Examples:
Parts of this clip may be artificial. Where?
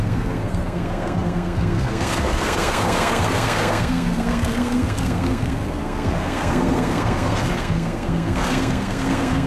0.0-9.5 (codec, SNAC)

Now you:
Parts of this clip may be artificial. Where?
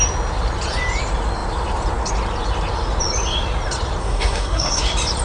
4.0-4.8 (codec, SNAC)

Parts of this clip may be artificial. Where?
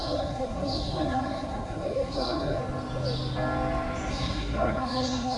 0.0-2.6 (codec, SNAC); 4.1-5.4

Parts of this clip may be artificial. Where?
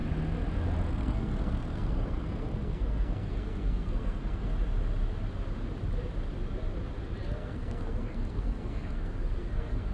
0.9-4.5 (codec, SNAC); 7.3-9.9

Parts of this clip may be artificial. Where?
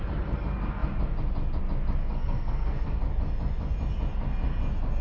2.0-3.0 (codec, SNAC)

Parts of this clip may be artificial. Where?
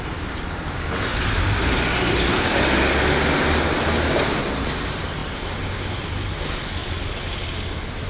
none